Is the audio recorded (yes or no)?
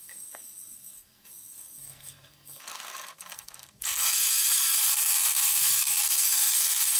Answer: no